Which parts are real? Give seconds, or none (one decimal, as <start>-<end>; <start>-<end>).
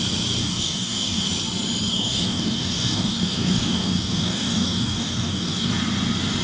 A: 0.0-0.4; 1.3-1.9; 5.7-6.4